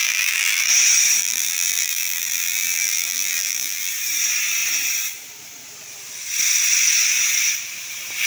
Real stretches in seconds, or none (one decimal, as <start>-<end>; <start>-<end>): 0.7-1.2; 3.9-8.3